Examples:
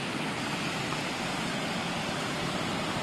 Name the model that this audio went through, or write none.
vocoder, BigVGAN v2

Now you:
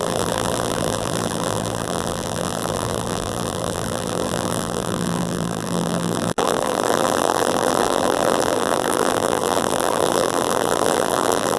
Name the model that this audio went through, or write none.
vocoder, BigVGAN v2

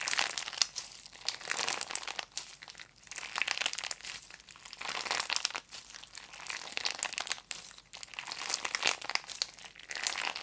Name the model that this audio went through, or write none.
none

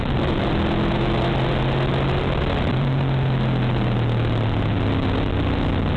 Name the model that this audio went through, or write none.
none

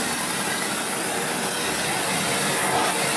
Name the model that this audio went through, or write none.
vocoder, BigVGAN v2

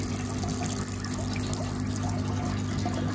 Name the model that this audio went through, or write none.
none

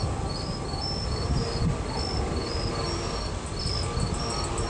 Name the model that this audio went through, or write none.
none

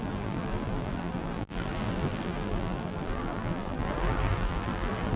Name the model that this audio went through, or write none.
vocoder, BigVGAN v2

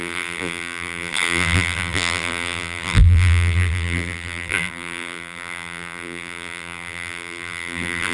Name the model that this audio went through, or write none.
vocoder, BigVGAN v2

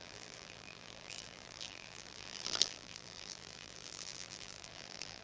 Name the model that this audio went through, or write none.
vocoder, BigVGAN v2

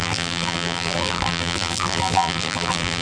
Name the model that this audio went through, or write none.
vocoder, BigVGAN v2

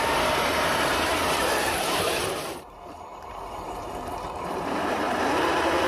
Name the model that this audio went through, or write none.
vocoder, BigVGAN v2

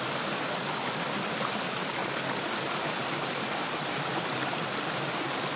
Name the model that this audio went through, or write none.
none